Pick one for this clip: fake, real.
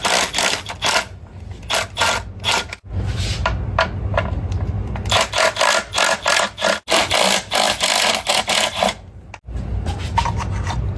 real